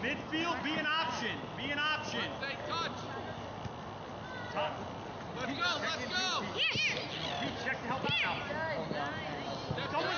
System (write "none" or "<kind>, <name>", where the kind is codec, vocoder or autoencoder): none